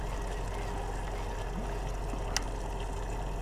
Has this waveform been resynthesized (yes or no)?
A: no